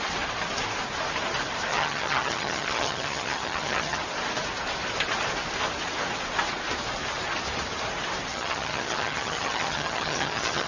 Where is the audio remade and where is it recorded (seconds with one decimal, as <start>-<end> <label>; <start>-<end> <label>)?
0.0-1.7 recorded; 1.7-4.0 remade; 4.0-8.3 recorded; 8.3-10.7 remade